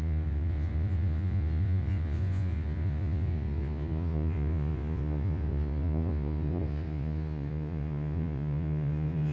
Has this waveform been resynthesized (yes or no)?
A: yes